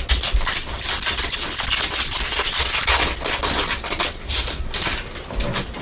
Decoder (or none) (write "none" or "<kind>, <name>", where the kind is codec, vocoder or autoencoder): none